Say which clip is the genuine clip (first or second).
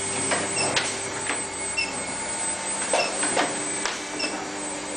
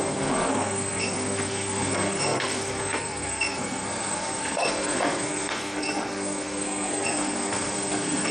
first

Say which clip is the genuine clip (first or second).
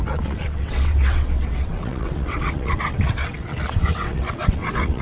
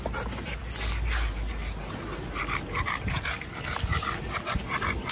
second